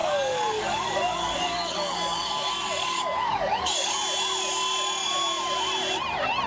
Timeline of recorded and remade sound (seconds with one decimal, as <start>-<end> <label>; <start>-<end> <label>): 0.0-3.9 remade; 3.9-6.5 recorded